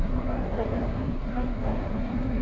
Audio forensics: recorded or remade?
remade